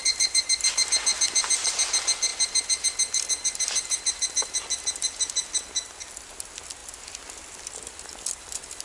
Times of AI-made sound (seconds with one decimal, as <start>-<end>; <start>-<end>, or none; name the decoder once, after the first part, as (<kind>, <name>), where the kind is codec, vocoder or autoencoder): 0.0-0.7 (vocoder, BigVGAN v2)